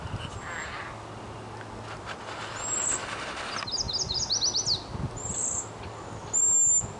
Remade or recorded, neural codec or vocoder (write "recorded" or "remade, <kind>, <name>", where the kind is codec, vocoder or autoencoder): recorded